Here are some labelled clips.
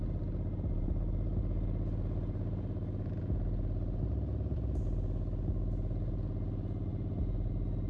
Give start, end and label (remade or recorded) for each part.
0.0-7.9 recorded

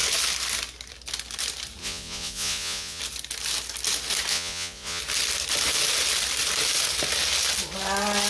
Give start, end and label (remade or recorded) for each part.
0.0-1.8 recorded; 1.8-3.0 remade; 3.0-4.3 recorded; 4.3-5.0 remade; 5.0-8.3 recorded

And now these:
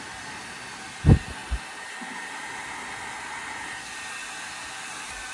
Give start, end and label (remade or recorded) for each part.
0.0-5.3 recorded